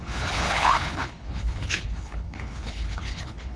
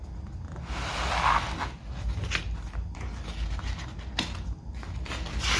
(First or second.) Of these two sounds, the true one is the second